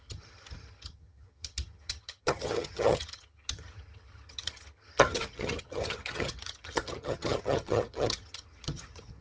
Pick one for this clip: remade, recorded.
remade